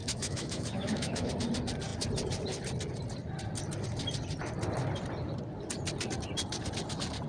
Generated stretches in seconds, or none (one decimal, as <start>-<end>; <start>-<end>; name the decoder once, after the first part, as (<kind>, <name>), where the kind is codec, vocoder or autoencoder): 0.0-1.3 (autoencoder, DAC-VAE)